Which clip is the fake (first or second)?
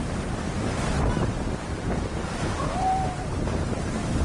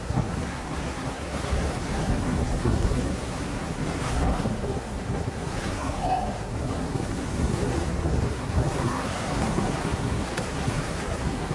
second